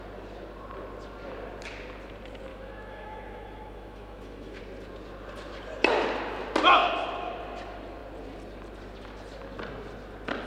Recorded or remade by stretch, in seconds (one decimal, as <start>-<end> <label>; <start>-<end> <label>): 0.0-2.5 recorded; 2.5-4.6 remade; 4.6-10.5 recorded